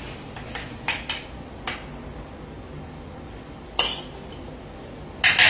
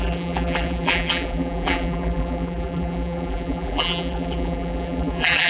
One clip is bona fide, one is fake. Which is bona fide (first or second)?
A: first